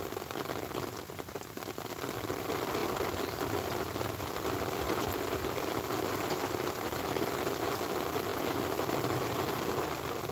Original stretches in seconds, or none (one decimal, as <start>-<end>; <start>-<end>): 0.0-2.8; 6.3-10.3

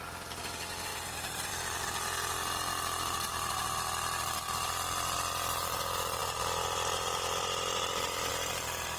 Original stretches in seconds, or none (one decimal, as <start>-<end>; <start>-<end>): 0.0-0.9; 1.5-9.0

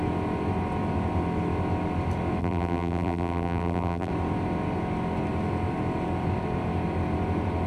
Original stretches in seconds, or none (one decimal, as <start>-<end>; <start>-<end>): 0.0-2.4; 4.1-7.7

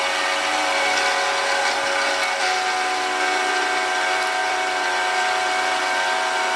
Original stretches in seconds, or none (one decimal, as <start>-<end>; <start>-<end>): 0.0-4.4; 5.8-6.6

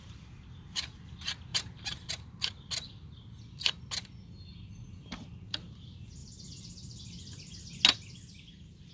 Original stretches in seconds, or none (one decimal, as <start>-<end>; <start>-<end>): 0.0-1.5; 2.1-6.2; 7.0-8.3

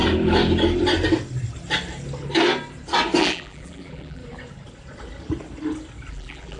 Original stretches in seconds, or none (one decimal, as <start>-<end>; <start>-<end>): 0.0-3.2; 4.2-6.1

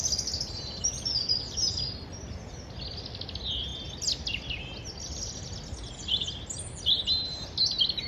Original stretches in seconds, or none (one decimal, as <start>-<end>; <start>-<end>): 0.0-8.1